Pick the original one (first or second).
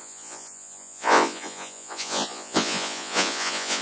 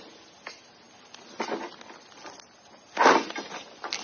second